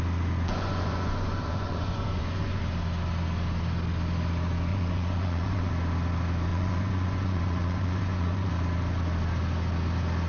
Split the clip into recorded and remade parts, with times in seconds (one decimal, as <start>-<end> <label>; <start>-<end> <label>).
0.0-0.5 recorded; 0.5-2.6 remade; 2.6-4.7 recorded; 4.7-5.7 remade; 5.7-6.5 recorded; 6.5-8.5 remade; 8.5-10.3 recorded